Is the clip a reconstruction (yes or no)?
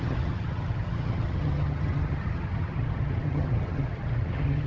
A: yes